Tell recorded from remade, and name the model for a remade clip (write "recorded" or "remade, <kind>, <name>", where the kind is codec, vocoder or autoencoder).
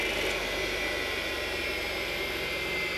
recorded